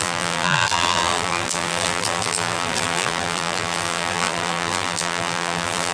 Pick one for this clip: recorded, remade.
remade